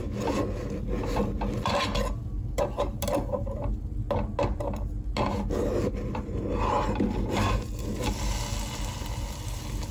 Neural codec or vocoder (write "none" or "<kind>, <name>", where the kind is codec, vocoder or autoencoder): none